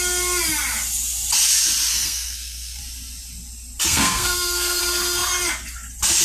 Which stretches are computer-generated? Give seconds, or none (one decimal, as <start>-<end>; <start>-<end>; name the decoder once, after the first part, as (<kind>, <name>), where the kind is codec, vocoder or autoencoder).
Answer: 1.9-2.8 (codec, SNAC); 3.8-4.8